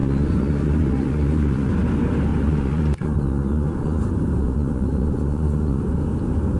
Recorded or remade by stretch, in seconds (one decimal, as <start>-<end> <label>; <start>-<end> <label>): 0.0-1.7 remade; 1.7-2.3 recorded; 2.3-4.0 remade; 4.0-4.4 recorded; 4.4-5.8 remade; 5.8-6.6 recorded